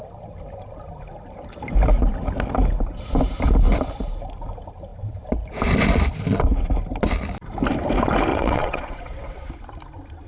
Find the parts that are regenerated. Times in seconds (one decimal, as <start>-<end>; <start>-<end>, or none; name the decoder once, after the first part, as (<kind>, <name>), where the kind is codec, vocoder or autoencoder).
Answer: 8.3-9.5 (vocoder, WaveNeXt)